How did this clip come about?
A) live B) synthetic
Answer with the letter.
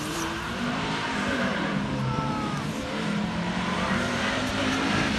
B